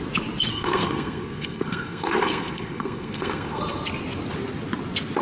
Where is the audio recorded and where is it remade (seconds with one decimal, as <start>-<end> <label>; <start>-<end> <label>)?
0.0-0.5 recorded; 0.5-3.6 remade; 3.6-5.2 recorded